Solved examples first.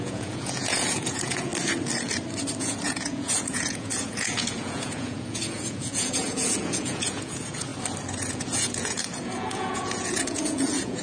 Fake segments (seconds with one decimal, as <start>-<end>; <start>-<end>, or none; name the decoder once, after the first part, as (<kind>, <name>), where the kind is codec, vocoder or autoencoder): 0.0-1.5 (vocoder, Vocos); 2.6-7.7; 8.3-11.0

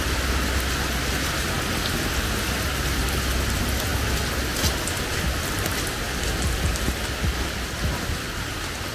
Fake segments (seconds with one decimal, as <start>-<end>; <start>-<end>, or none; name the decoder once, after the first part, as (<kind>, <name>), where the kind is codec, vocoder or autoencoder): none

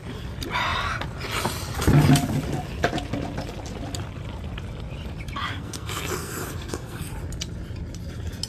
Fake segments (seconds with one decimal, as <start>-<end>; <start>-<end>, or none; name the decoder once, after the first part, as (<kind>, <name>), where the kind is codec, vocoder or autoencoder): 5.5-7.1 (codec, SNAC)

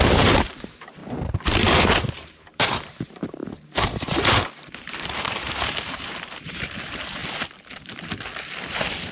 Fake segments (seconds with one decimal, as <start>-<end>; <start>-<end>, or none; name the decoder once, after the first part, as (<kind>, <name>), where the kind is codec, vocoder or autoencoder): 0.0-1.0 (vocoder, BigVGAN v2); 2.0-7.2

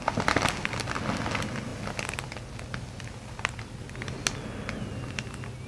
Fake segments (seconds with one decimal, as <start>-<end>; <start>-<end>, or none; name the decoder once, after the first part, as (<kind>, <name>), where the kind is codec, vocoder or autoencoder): none